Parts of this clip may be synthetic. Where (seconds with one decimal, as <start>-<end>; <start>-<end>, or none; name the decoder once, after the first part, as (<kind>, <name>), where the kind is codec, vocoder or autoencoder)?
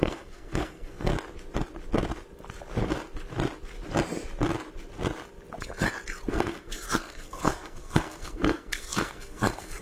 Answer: 0.0-1.1 (codec, SNAC); 6.3-9.8